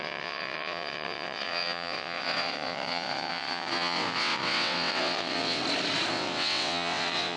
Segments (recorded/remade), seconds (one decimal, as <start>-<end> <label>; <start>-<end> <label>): 0.0-5.6 remade; 5.6-6.1 recorded; 6.1-7.4 remade